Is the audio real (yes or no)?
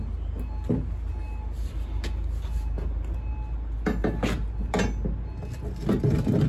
yes